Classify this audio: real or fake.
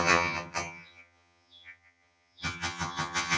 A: fake